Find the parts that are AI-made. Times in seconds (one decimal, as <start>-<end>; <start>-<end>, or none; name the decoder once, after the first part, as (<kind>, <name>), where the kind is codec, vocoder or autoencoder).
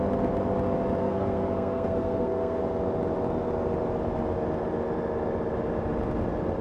1.0-2.6 (codec, SNAC)